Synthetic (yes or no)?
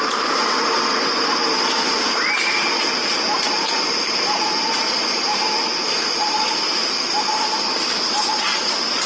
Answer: yes